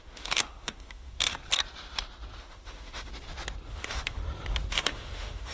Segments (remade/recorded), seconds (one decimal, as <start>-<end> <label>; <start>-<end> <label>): 0.0-1.4 remade; 1.4-2.4 recorded; 2.4-3.1 remade; 3.1-3.7 recorded; 3.7-4.2 remade; 4.2-4.7 recorded; 4.7-5.5 remade